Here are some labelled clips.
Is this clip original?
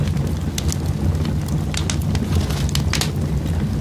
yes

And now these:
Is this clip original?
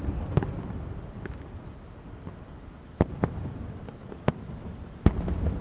yes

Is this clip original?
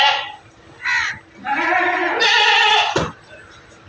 yes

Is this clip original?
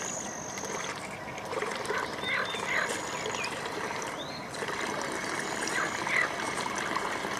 yes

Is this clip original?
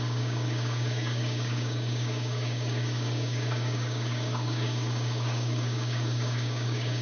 no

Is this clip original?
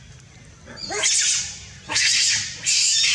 yes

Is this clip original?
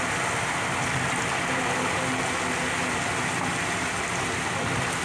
yes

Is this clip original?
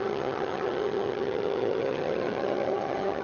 no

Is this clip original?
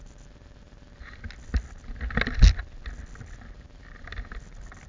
yes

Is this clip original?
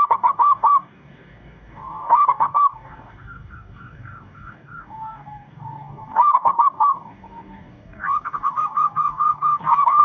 no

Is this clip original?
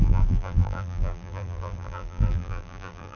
no